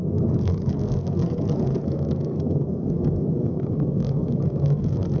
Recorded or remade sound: remade